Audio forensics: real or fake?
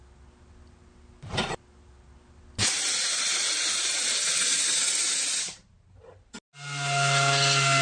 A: real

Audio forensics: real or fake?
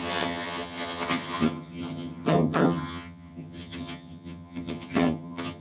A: fake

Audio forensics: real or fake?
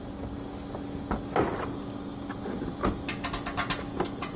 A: real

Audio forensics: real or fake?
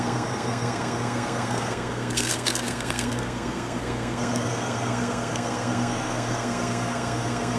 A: fake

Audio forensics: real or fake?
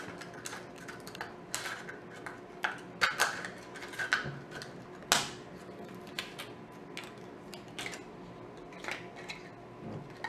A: real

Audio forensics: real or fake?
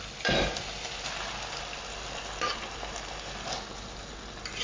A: real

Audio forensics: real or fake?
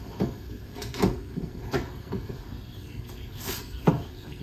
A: fake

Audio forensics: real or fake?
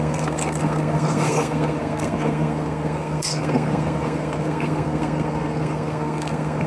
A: fake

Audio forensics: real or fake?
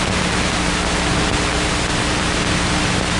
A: real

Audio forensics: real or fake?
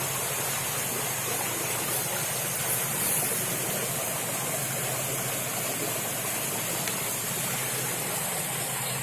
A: real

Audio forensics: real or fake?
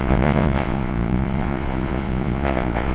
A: fake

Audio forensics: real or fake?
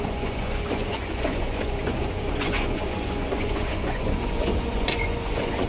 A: fake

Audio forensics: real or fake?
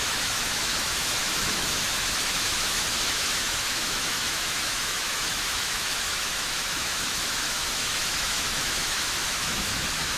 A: fake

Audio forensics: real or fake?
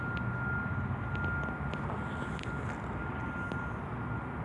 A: real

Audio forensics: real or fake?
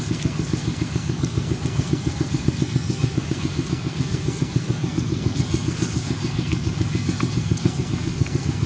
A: fake